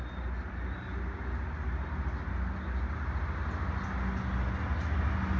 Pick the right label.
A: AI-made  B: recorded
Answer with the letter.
B